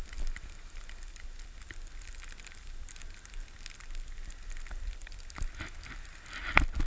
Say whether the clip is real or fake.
real